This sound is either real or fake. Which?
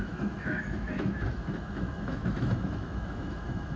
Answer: fake